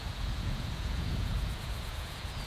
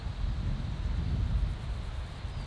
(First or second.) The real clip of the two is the second